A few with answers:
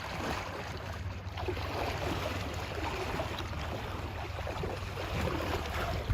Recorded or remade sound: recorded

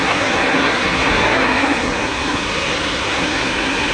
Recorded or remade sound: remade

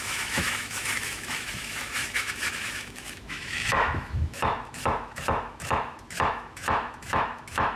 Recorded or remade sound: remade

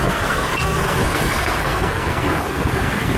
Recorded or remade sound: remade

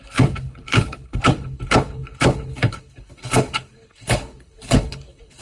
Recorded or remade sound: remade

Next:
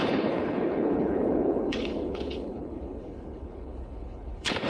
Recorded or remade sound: remade